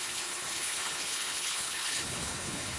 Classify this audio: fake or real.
fake